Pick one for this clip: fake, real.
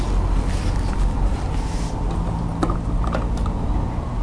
real